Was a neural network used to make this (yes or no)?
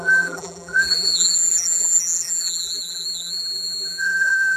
yes